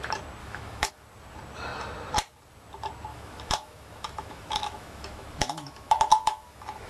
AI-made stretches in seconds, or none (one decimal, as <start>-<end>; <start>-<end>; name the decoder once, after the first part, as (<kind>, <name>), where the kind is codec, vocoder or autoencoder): 0.4-0.9 (autoencoder, DAC-VAE); 3.1-6.9